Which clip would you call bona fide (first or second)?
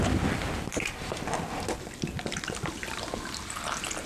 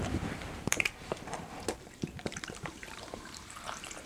first